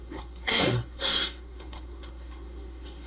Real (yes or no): no